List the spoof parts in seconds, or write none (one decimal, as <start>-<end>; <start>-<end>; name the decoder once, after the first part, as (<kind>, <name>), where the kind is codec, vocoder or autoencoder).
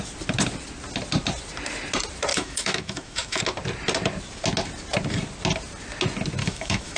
2.3-3.4 (autoencoder, DAC-VAE); 6.4-7.0